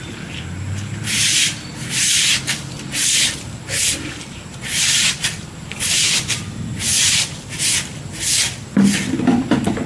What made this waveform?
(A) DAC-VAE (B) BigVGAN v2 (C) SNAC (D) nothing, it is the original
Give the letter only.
D